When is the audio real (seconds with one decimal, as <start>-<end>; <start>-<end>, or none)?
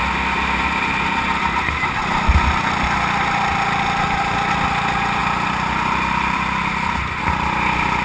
0.0-5.2; 7.2-8.0